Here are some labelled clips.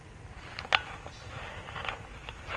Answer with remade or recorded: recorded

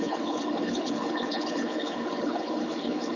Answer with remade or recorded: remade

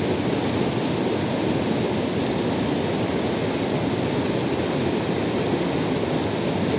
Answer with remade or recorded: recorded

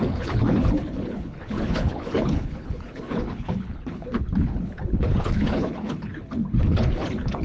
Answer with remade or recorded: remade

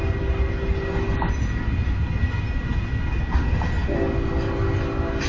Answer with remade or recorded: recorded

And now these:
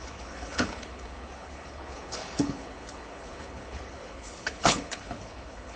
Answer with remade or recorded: remade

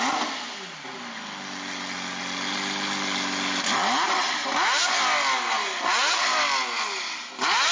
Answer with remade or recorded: recorded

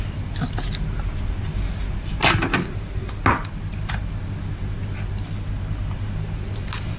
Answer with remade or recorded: recorded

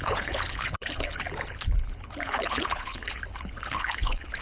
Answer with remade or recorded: remade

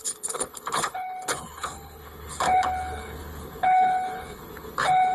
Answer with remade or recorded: remade